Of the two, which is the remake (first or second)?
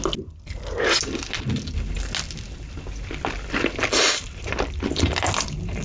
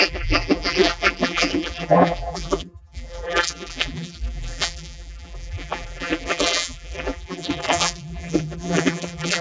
second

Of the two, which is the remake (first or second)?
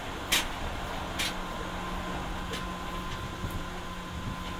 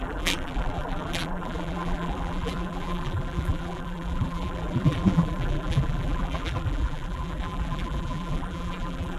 second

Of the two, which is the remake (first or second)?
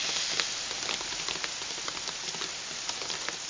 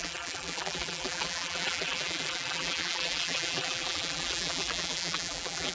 second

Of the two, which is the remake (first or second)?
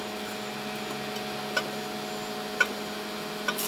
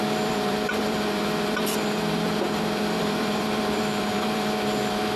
second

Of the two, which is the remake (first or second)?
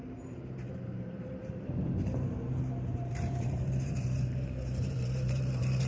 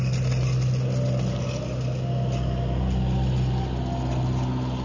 first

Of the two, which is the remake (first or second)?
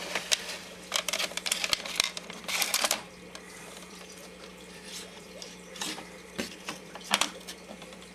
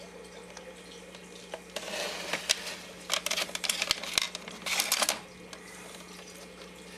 first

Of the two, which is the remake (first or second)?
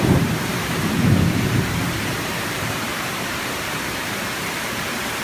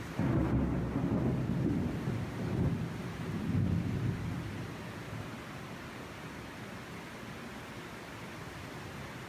first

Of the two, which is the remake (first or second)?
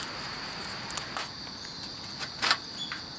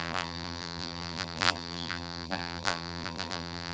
second